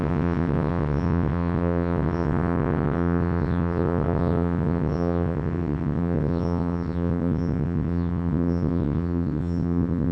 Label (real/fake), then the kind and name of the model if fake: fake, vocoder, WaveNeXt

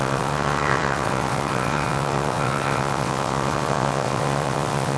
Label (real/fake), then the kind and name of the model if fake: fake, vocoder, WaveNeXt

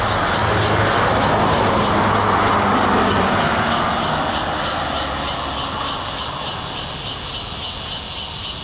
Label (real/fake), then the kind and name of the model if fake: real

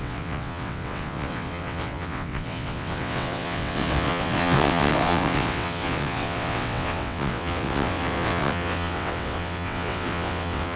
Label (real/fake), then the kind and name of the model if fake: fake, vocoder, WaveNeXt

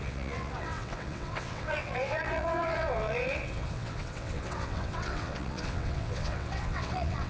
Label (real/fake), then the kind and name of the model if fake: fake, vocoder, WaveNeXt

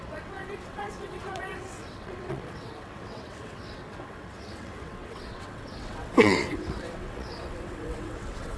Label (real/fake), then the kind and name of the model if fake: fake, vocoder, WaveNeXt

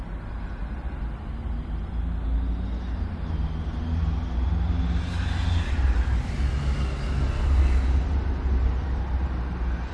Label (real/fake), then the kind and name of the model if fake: real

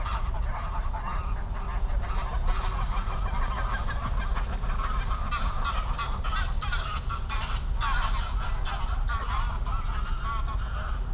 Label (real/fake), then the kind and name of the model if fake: real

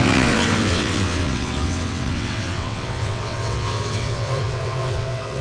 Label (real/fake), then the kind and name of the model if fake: fake, vocoder, WaveNeXt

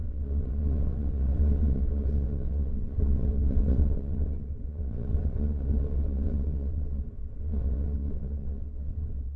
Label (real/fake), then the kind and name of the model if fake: fake, vocoder, WaveNeXt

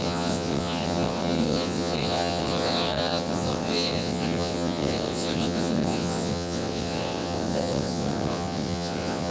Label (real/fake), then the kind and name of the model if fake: fake, vocoder, WaveNeXt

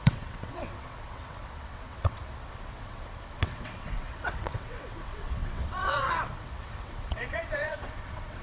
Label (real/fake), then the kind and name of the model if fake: fake, vocoder, WaveNeXt